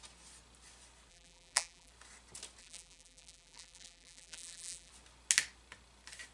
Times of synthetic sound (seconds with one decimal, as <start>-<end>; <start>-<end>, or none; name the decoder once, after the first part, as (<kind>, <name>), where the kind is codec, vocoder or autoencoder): 1.1-1.9 (vocoder, BigVGAN v2); 2.6-4.9